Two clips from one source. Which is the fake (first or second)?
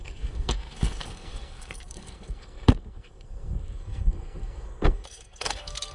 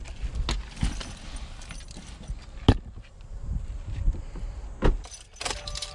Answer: first